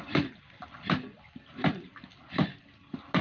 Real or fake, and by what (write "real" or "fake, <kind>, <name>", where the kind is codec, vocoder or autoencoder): real